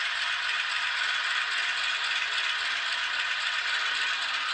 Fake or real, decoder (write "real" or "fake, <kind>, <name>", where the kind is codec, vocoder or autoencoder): real